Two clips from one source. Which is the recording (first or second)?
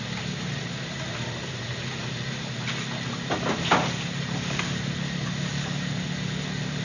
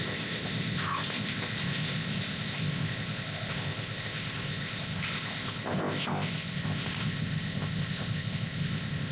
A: first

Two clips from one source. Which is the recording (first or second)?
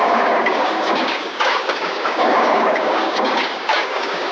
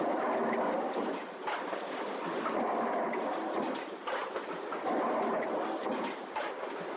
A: second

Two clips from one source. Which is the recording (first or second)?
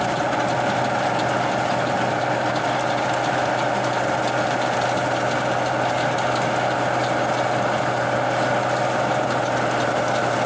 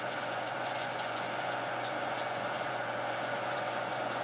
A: first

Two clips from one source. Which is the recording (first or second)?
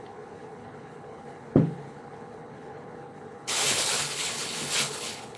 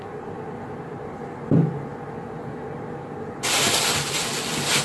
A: second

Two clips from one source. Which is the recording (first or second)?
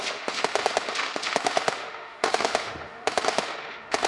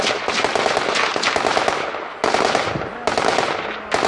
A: second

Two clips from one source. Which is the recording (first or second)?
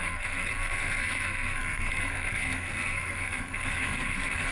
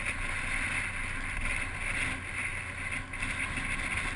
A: second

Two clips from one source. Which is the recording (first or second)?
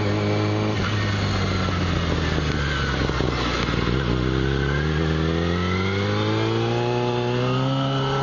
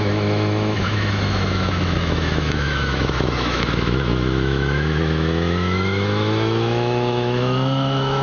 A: first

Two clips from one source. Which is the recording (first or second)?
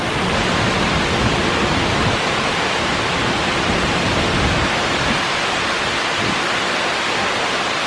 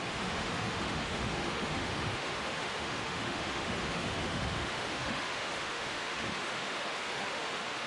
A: first